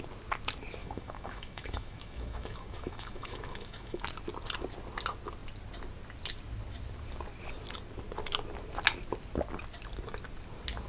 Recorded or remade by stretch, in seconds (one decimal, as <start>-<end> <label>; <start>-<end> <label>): 0.0-0.8 recorded; 0.8-4.0 remade; 4.0-10.9 recorded